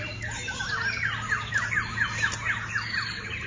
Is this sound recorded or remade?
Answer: recorded